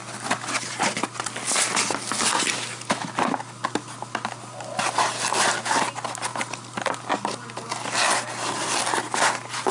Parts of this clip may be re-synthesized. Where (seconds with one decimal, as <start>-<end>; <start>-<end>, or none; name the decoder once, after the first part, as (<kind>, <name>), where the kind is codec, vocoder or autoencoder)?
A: none